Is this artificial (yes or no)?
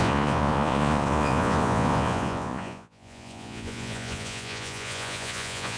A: yes